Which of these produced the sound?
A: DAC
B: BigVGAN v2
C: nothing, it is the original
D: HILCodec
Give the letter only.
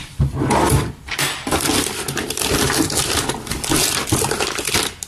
C